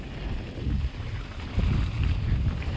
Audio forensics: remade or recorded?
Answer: recorded